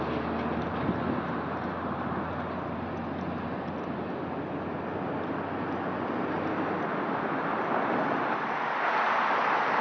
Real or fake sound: real